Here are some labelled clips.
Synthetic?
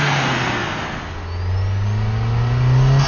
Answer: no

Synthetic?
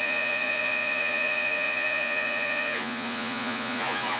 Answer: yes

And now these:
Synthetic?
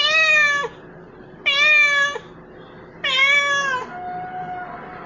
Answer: no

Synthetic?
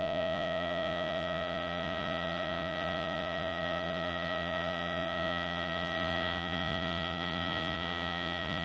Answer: yes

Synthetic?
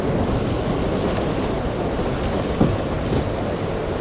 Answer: no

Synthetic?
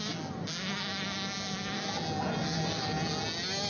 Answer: no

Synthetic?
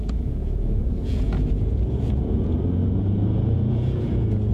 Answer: yes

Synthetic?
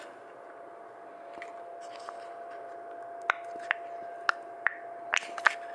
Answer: no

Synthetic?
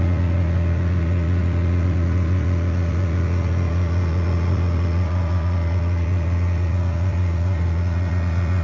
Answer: yes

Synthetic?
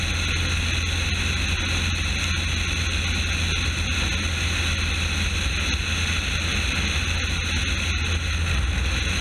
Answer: no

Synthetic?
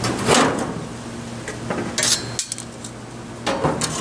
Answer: no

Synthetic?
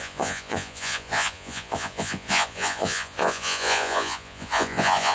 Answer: yes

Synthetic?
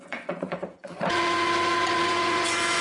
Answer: yes